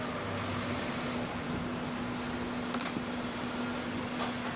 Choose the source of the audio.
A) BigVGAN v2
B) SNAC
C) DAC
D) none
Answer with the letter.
D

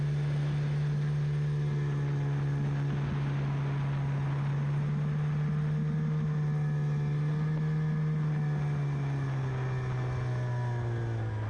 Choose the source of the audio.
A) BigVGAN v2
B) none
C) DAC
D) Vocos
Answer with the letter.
B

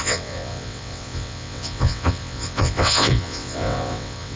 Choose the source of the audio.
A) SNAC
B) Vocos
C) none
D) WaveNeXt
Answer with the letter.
D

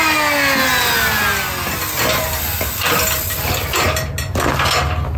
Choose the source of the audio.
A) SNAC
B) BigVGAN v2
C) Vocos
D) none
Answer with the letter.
D